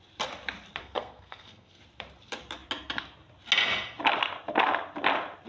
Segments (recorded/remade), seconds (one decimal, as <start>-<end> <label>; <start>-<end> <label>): 0.0-0.8 recorded; 0.8-1.8 remade; 1.8-5.5 recorded